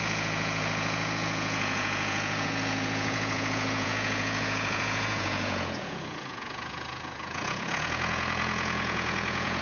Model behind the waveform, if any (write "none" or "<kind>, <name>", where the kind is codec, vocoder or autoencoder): vocoder, Vocos